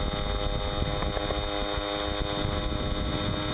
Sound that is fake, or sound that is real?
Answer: real